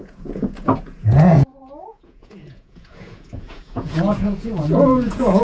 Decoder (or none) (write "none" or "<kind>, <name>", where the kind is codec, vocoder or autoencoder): vocoder, Vocos